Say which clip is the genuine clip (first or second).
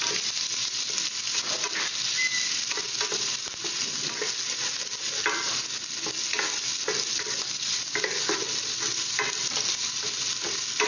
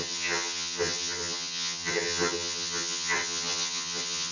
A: first